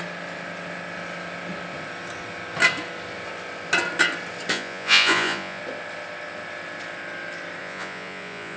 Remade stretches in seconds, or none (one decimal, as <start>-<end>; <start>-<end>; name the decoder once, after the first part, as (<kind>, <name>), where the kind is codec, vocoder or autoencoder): 4.5-5.6 (vocoder, Vocos); 7.6-8.6